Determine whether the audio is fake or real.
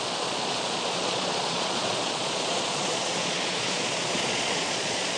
fake